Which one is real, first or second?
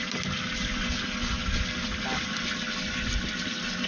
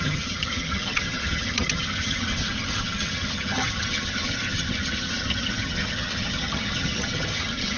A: first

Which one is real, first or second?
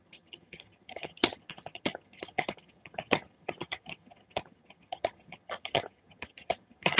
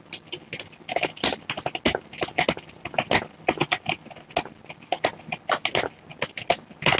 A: second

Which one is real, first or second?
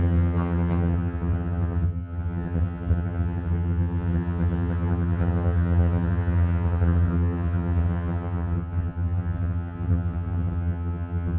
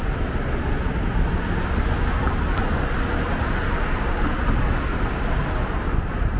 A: second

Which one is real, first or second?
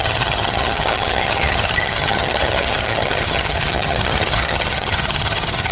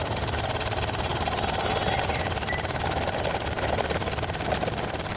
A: second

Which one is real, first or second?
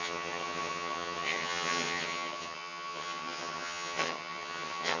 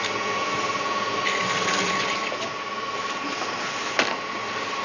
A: second